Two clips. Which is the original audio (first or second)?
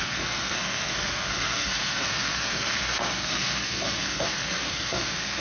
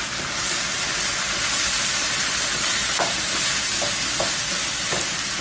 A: second